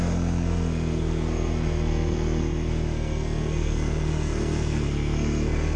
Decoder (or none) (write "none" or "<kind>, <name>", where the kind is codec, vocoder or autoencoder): codec, SNAC